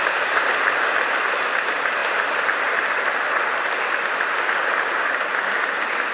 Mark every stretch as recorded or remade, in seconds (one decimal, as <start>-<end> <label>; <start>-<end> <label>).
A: 0.0-6.1 recorded